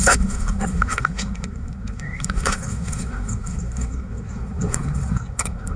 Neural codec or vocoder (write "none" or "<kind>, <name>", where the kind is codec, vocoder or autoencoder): codec, SNAC